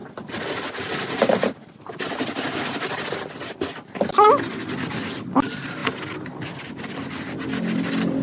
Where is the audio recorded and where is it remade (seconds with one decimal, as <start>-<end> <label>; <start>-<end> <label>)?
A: 0.0-8.2 recorded